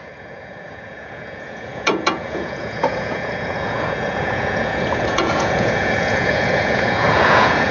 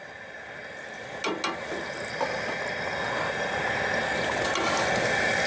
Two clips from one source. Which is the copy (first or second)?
first